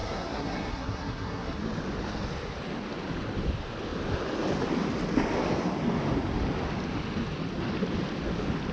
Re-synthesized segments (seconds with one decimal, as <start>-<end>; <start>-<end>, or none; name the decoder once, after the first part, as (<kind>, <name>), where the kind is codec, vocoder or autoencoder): 0.0-1.6 (codec, SNAC)